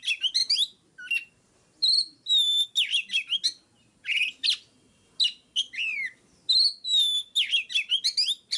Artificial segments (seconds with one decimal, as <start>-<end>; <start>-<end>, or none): none

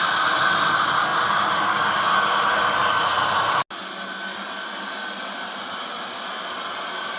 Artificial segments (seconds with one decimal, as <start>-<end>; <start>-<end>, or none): none

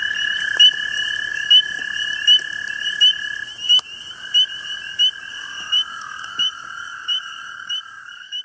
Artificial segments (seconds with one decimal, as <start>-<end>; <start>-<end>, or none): 1.3-1.8; 5.3-8.4

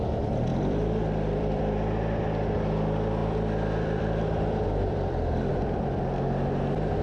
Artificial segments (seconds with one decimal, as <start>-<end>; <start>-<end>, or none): 0.5-1.6; 3.2-5.5

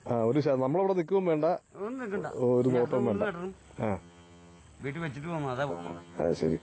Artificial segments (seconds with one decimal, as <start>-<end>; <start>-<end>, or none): 4.0-4.6; 5.7-6.6

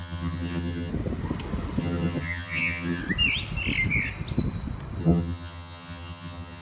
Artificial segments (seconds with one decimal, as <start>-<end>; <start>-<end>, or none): 0.0-0.9; 1.8-3.0; 5.0-6.6